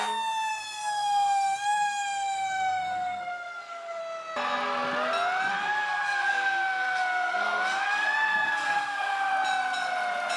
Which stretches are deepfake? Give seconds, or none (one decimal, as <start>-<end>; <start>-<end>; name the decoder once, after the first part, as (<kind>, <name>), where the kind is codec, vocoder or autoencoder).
0.5-4.0 (codec, SNAC); 5.5-9.3